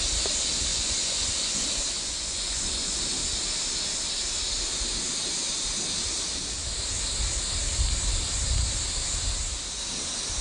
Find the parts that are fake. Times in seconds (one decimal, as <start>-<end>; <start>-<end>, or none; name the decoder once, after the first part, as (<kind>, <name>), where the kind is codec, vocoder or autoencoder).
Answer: 0.7-3.0 (vocoder, Vocos)